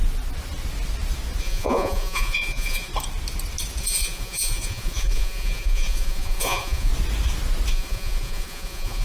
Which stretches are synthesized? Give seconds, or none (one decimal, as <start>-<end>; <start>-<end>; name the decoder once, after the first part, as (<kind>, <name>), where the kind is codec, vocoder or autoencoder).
1.4-2.9 (vocoder, Vocos); 3.8-6.9; 7.7-9.0